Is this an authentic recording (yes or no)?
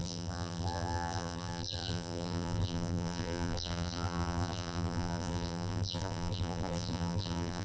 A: no